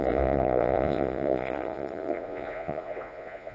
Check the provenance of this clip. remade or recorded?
remade